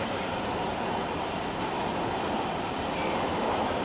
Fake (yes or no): yes